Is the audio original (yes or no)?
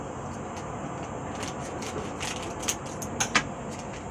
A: yes